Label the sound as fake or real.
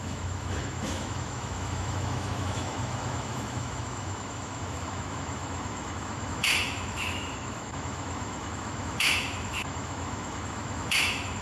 fake